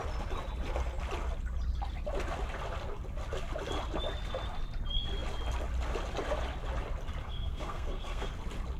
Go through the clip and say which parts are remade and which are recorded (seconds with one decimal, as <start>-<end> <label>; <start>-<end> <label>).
0.0-7.2 recorded; 7.2-8.3 remade; 8.3-8.8 recorded